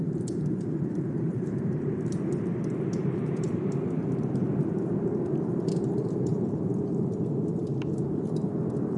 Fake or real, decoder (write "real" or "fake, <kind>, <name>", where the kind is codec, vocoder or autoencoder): fake, vocoder, BigVGAN v2